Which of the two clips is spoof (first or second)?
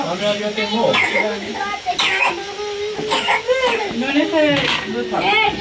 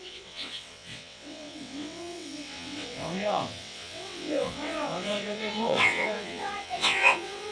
second